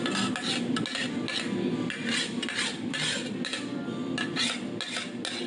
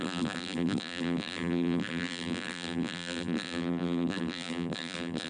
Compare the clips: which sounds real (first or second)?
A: first